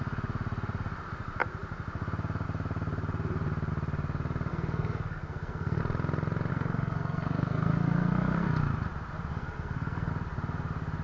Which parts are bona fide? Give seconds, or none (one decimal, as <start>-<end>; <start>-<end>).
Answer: 0.0-4.5; 5.8-6.5; 8.5-9.3; 10.1-11.0